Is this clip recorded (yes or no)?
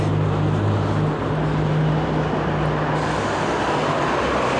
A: yes